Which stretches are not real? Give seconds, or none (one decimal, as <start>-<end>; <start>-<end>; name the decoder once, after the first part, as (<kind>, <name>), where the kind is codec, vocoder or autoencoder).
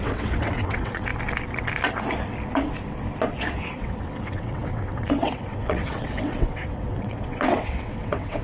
0.0-1.1 (vocoder, WaveNeXt); 3.5-8.4